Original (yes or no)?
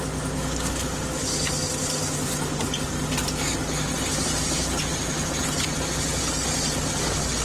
yes